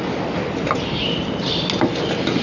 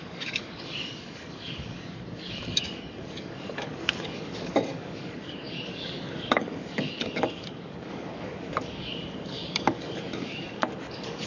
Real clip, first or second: first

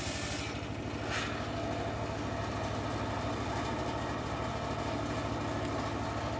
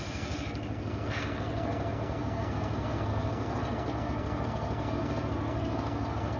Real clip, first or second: first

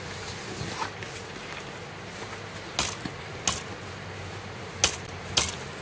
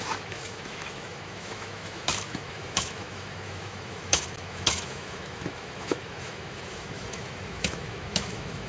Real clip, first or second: first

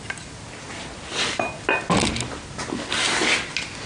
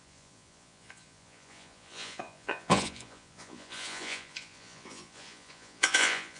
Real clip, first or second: first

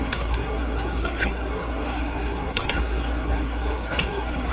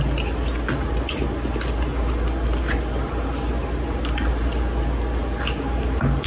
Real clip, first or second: second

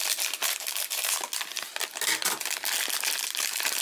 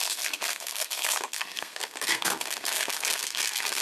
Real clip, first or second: first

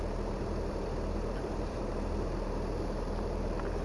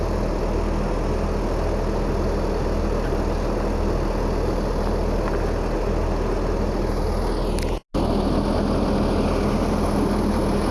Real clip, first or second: second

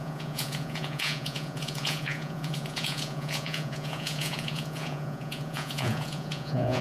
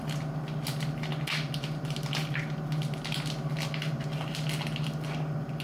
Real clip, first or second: second